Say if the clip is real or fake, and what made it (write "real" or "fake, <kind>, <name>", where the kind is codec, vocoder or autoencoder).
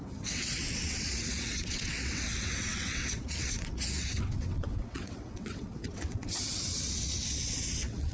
fake, vocoder, WaveNeXt